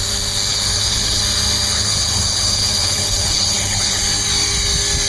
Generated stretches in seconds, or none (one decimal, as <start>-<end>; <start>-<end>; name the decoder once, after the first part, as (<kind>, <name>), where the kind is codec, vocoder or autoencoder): 0.5-1.2 (codec, HILCodec); 1.7-4.0